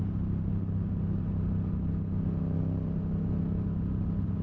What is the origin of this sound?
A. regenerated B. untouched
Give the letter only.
B